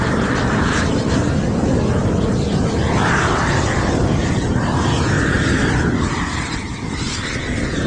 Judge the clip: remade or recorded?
recorded